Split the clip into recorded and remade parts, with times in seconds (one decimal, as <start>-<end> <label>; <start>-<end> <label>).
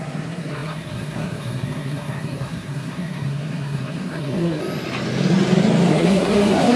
0.0-4.6 remade; 4.6-5.9 recorded; 5.9-6.8 remade